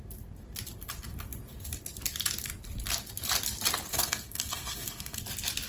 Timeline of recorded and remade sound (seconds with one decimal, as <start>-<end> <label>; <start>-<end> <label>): 0.0-3.9 recorded; 3.9-5.2 remade; 5.2-5.7 recorded